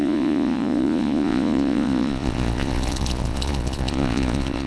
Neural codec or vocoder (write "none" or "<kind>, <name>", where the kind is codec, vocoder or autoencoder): vocoder, Vocos